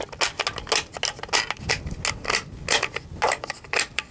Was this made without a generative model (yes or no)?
yes